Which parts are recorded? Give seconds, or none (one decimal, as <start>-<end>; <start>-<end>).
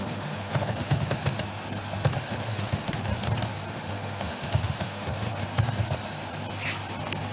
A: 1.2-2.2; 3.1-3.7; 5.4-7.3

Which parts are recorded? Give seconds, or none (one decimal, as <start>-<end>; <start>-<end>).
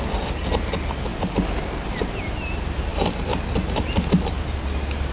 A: 0.0-5.1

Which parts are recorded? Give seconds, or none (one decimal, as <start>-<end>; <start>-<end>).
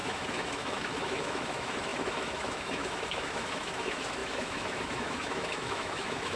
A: none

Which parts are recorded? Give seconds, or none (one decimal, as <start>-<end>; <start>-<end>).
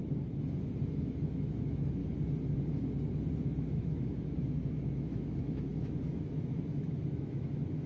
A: 0.0-1.2; 2.0-3.4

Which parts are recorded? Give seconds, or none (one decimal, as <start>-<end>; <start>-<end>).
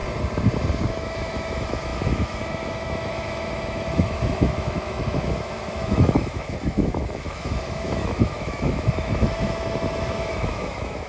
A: 0.0-0.9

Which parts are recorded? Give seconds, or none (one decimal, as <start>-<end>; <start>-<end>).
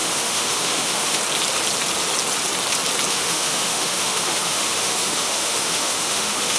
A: 1.2-3.1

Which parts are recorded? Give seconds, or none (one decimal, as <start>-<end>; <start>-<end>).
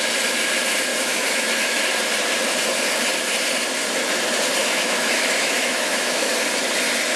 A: 0.0-0.9; 1.8-4.6; 6.3-7.2